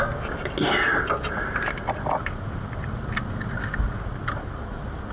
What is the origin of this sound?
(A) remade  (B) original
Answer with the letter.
B